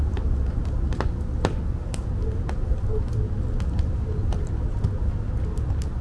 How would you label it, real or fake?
real